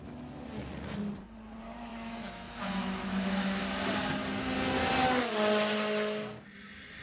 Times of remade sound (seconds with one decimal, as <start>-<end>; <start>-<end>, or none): 1.9-3.6